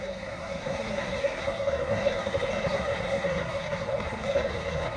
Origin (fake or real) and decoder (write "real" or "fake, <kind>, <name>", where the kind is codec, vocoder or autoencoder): fake, codec, SNAC